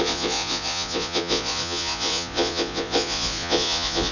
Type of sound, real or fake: fake